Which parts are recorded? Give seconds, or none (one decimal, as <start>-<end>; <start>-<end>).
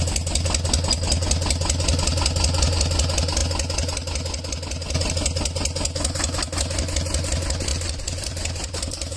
0.0-7.7